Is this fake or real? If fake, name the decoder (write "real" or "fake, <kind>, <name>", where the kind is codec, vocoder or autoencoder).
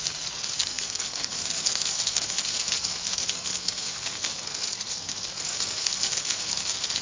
fake, codec, SNAC